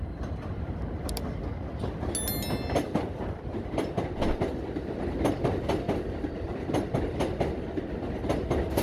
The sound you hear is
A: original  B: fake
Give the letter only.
A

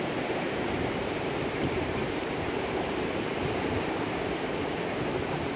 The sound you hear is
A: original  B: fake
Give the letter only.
B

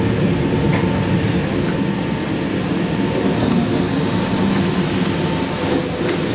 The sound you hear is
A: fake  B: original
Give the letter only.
B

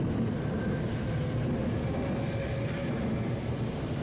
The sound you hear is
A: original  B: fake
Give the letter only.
A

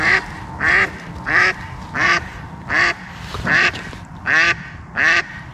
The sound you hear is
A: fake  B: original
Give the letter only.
B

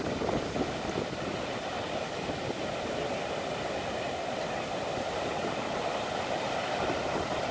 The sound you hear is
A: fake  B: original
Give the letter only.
B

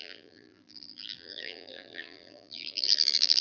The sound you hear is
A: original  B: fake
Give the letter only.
B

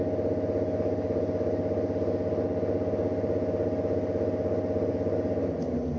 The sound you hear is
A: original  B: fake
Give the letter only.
A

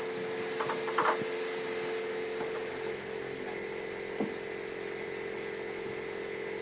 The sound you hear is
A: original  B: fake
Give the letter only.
A